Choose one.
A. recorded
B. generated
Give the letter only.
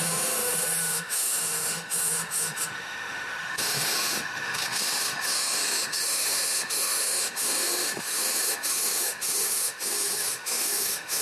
B